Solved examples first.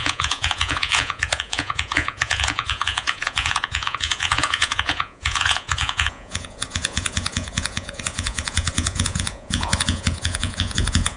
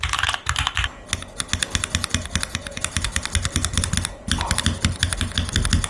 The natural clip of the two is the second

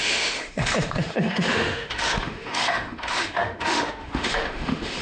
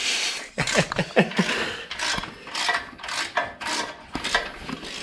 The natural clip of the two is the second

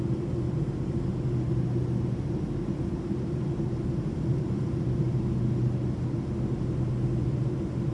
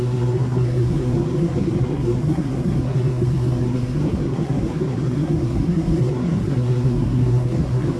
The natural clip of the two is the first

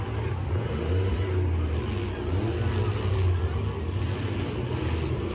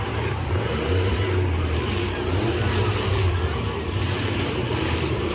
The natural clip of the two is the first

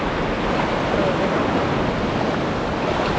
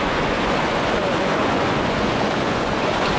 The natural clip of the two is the first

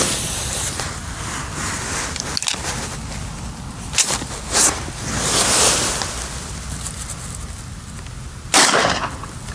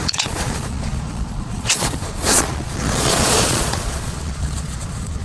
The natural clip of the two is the first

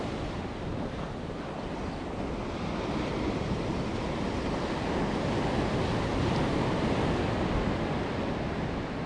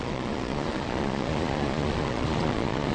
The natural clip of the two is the first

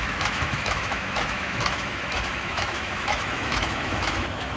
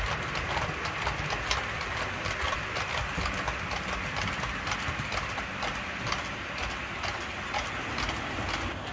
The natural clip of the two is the second